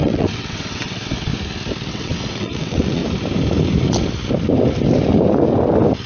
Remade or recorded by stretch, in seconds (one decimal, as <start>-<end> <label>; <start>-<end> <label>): 0.0-1.3 remade; 1.3-1.9 recorded; 1.9-3.0 remade; 3.0-6.1 recorded